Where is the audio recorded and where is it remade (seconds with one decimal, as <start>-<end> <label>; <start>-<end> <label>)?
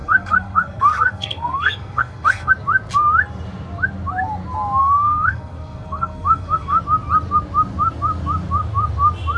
0.0-2.5 remade; 2.5-4.8 recorded; 4.8-6.8 remade; 6.8-9.4 recorded